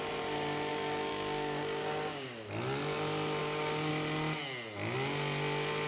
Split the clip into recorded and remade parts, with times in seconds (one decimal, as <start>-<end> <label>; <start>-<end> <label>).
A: 0.0-0.7 recorded; 0.7-2.5 remade; 2.5-3.4 recorded; 3.4-3.9 remade; 3.9-5.9 recorded